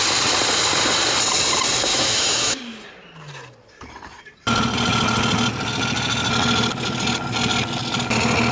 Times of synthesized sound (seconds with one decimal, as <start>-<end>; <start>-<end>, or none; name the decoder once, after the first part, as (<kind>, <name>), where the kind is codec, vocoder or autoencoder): 1.9-2.6 (autoencoder, DAC-VAE)